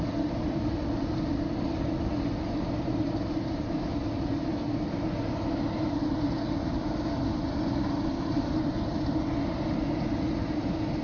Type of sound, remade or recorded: recorded